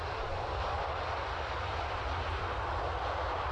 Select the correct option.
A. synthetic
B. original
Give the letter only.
B